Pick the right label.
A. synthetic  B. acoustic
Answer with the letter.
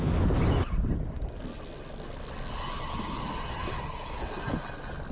B